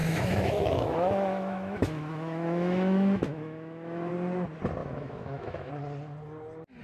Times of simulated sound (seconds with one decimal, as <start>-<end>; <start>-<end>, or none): 0.0-4.1; 4.8-5.7